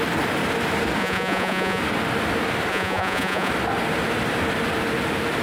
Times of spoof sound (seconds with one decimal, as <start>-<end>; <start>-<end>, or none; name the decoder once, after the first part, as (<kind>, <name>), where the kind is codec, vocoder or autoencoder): 1.0-1.8 (vocoder, Vocos); 2.7-3.5